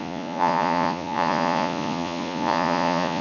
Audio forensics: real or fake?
fake